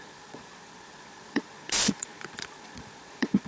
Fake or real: fake